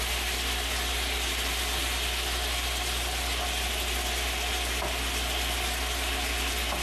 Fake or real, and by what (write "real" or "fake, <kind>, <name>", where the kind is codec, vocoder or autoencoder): real